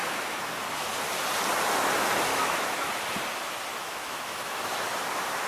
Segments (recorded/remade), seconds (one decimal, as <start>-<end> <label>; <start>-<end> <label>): 0.0-0.5 remade; 0.5-2.3 recorded; 2.3-2.9 remade; 2.9-3.7 recorded; 3.7-4.7 remade; 4.7-5.5 recorded